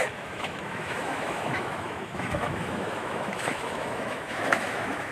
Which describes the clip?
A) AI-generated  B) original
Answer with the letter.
A